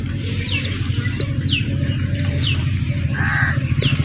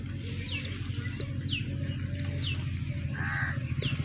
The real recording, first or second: second